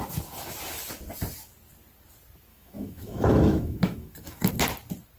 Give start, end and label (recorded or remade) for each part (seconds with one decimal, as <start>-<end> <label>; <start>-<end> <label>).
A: 0.0-2.5 recorded; 2.5-4.5 remade; 4.5-5.2 recorded